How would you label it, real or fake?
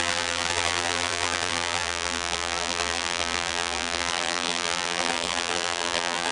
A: fake